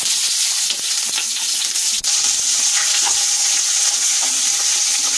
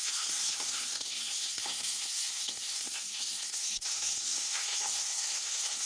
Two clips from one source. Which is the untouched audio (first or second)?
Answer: first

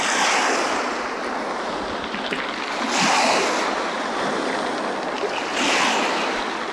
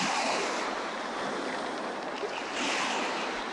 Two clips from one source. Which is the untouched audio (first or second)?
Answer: first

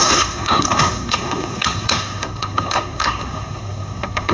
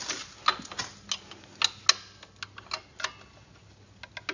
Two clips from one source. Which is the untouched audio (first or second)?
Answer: second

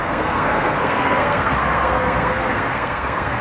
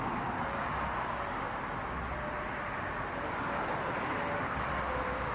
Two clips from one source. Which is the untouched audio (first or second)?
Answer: second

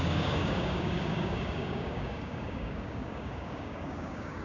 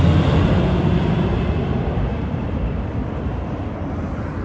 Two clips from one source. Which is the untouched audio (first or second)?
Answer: second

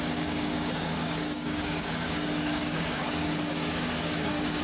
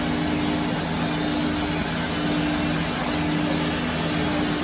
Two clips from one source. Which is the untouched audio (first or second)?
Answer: second